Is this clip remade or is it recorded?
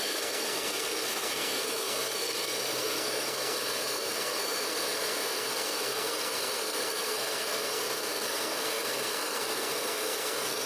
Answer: remade